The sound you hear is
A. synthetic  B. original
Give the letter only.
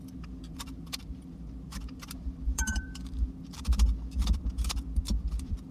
A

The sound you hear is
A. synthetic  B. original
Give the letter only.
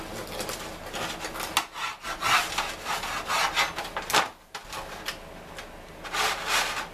B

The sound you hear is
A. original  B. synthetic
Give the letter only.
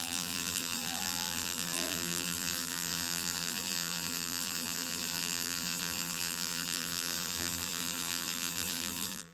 B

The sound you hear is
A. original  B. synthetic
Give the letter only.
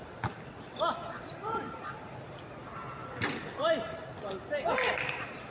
A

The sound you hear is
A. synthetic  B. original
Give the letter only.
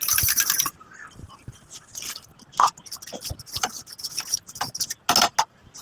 B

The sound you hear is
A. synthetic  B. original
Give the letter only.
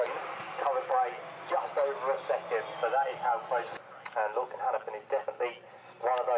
B